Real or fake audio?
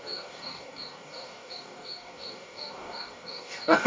fake